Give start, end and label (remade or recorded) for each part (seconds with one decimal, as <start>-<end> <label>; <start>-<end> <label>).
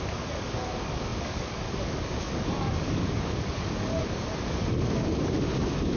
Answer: 0.0-6.0 remade